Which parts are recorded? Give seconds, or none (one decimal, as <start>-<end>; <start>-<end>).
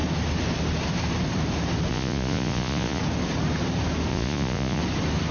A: 0.0-1.9; 3.0-4.1; 4.8-5.3